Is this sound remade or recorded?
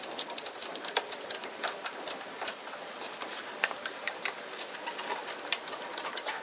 recorded